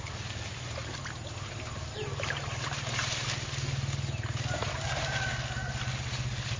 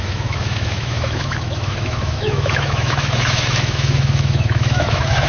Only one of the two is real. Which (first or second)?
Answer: first